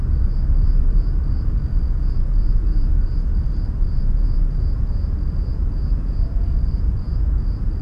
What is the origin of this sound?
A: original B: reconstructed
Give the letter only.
B